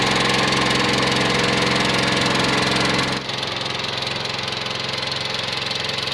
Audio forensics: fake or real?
real